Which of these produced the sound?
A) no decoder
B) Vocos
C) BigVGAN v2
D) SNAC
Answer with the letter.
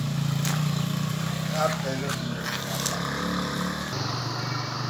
A